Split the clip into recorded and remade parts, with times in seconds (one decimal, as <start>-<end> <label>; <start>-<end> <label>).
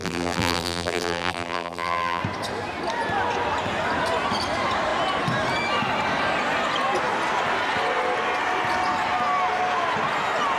0.0-2.2 remade; 2.2-10.6 recorded